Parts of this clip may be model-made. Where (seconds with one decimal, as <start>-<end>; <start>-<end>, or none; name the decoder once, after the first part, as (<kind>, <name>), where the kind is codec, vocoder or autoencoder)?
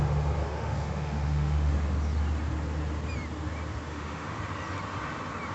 0.4-1.7 (autoencoder, DAC-VAE); 3.9-4.4